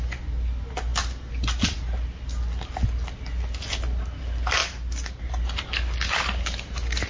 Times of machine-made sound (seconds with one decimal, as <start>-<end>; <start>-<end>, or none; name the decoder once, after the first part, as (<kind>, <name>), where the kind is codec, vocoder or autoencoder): none

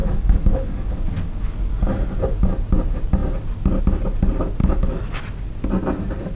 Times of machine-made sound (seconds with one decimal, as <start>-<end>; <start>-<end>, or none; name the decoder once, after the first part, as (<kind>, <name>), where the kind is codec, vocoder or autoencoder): 0.0-1.7 (codec, DAC); 4.6-5.2

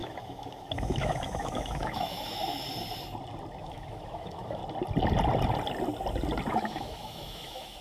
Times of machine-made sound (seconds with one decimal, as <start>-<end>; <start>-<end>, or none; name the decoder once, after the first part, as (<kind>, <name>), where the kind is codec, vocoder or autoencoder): 0.0-2.4 (autoencoder, DAC-VAE); 3.6-4.6; 6.5-7.8

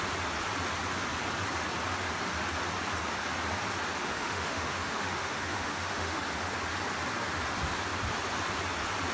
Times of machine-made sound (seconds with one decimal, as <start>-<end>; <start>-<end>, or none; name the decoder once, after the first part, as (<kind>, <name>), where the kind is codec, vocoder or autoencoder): 4.0-6.2 (autoencoder, DAC-VAE)

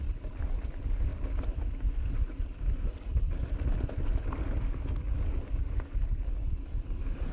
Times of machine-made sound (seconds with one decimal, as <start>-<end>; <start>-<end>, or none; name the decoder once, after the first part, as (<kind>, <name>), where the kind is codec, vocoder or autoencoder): none

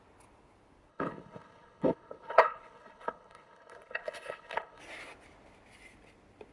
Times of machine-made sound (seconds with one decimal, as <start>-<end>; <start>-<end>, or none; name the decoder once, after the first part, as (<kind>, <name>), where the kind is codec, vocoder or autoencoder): 0.9-4.8 (codec, HILCodec)

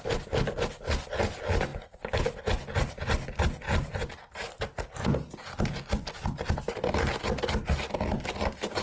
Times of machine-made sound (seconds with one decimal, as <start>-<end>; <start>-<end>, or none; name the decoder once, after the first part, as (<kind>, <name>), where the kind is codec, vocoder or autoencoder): none